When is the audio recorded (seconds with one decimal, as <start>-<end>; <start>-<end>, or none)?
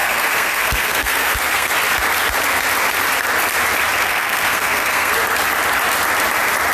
1.7-4.0; 5.1-6.7